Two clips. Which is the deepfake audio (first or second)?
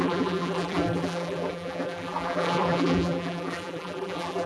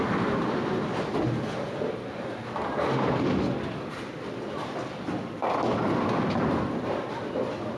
first